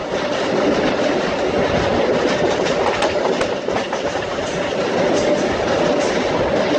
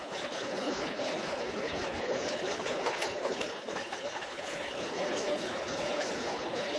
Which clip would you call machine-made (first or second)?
second